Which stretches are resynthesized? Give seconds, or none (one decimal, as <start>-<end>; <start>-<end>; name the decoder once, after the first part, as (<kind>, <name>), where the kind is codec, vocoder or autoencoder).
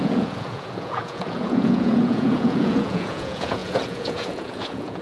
0.0-5.0 (vocoder, Vocos)